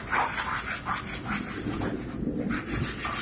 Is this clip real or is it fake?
real